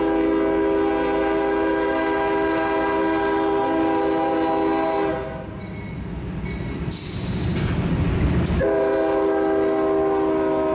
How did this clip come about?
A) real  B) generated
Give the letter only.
A